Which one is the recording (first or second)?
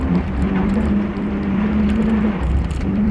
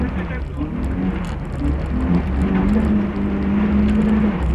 second